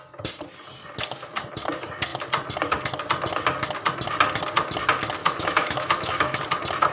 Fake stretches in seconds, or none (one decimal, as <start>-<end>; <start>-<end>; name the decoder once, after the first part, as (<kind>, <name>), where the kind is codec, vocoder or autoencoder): 5.2-6.4 (autoencoder, DAC-VAE)